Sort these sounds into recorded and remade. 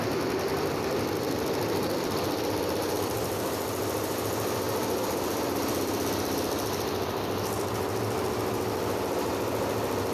remade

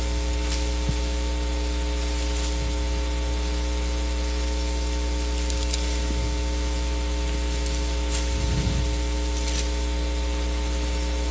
recorded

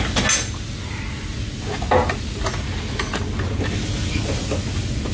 recorded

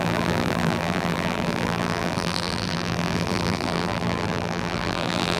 remade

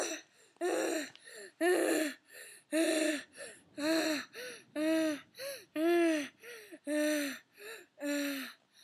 recorded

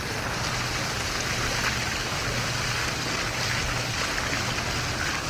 recorded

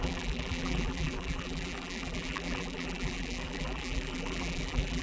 remade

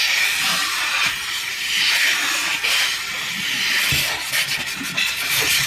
recorded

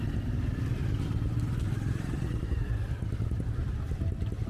recorded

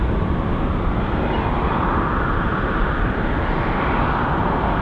recorded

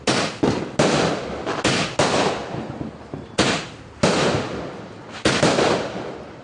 recorded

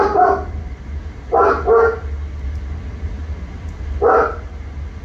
recorded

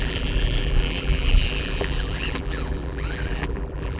remade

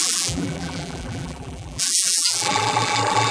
remade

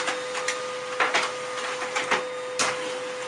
recorded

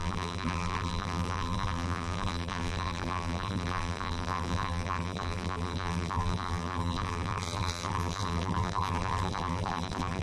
remade